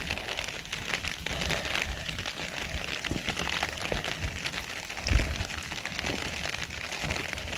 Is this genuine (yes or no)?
yes